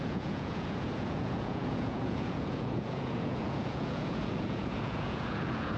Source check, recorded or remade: remade